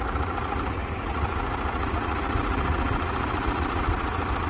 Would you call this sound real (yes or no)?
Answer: no